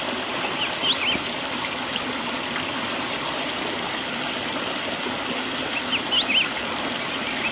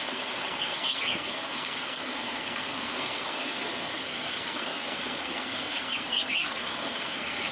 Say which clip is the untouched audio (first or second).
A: first